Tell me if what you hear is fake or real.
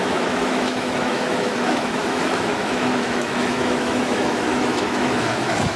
fake